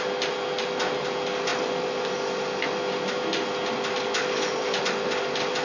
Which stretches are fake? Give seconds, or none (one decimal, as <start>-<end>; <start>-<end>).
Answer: none